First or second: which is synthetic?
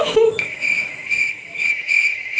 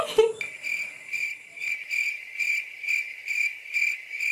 first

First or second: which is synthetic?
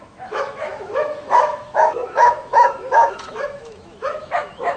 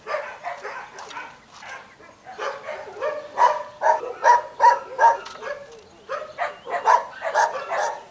first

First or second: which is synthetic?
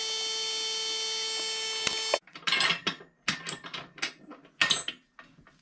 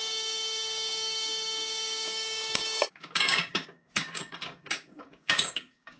second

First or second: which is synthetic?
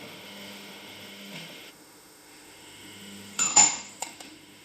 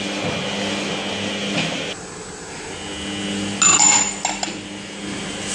first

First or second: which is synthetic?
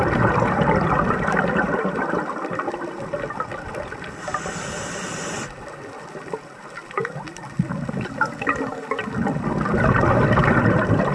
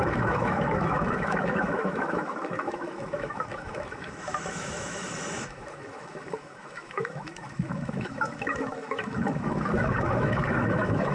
second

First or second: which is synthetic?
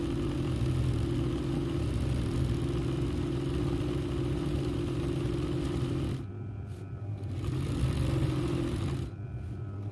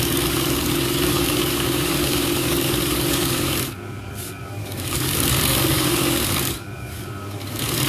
second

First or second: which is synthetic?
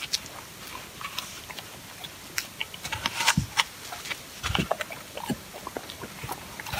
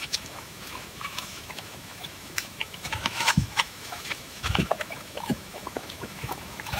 second